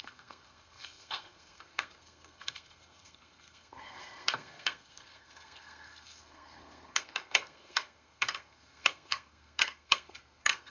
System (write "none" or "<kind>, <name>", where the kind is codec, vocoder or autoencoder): codec, SNAC